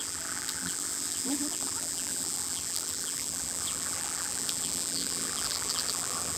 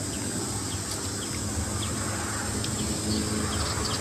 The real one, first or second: second